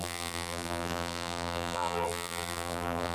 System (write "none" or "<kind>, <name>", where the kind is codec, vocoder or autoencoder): vocoder, BigVGAN v2